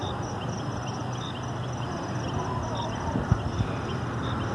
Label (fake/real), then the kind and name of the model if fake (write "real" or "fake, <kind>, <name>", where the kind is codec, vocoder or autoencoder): real